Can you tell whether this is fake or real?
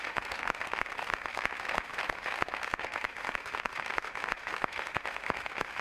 fake